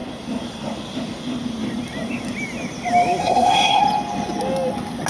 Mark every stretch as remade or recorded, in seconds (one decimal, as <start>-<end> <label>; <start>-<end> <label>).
0.0-3.2 recorded; 3.2-3.8 remade; 3.8-5.1 recorded